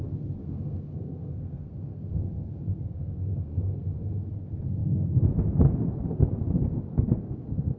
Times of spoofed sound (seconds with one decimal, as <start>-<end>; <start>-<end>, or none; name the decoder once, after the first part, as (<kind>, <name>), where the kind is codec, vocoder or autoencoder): 0.4-4.3 (codec, SNAC); 6.9-7.8